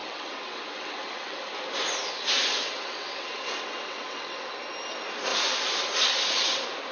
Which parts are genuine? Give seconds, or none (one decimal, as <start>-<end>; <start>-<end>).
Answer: 1.5-2.6; 4.5-6.9